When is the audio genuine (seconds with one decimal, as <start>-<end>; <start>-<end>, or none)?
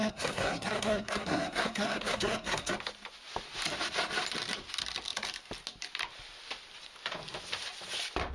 2.7-8.3